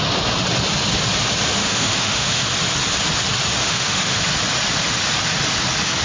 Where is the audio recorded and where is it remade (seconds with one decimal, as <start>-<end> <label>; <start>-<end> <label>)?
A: 0.0-1.6 recorded; 1.6-2.5 remade; 2.5-3.6 recorded; 3.6-4.2 remade; 4.2-6.0 recorded